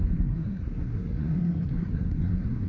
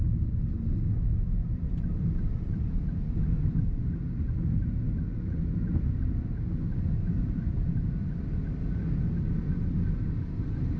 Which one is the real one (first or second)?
second